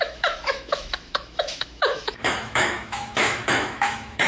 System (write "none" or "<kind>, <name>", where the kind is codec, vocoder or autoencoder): autoencoder, DAC-VAE